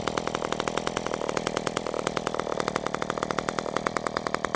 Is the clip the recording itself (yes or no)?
yes